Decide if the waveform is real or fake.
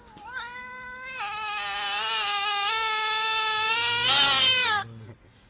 real